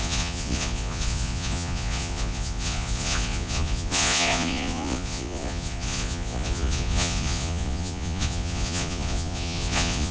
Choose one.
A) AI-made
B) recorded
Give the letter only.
A